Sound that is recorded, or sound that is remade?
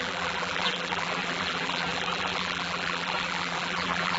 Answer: remade